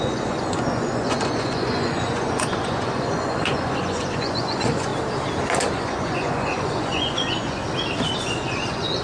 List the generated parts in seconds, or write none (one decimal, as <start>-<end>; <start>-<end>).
0.0-4.9; 5.7-7.6; 8.2-9.0